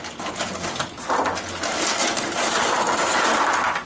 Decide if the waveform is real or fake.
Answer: real